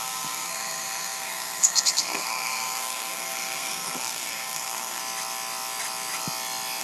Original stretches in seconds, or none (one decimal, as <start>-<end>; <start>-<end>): 5.0-6.8